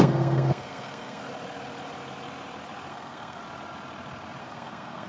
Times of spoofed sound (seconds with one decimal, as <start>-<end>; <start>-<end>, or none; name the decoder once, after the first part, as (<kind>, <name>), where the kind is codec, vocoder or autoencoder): 0.0-1.2 (codec, SNAC); 2.9-3.4; 4.4-5.1